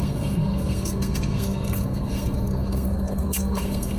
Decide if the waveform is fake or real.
fake